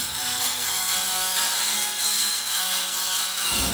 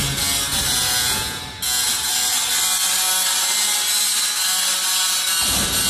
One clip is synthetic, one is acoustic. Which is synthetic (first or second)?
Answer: first